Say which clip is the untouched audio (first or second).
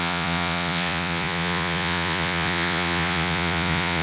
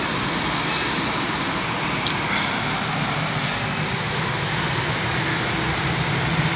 second